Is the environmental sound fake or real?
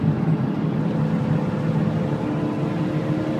real